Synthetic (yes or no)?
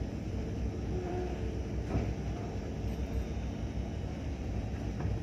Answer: yes